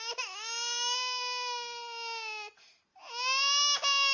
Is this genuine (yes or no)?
yes